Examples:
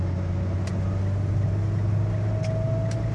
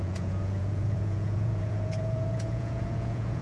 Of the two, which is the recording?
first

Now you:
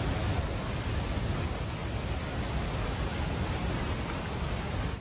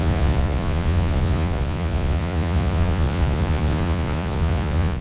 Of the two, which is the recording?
first